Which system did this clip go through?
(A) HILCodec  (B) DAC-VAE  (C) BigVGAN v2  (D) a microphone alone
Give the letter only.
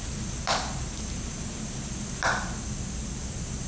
D